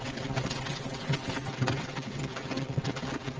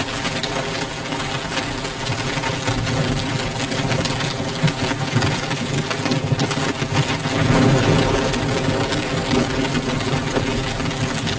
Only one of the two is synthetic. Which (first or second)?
first